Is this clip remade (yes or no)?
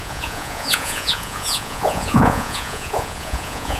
yes